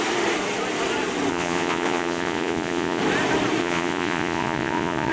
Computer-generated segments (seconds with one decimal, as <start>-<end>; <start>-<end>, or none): 1.3-3.0; 3.6-5.1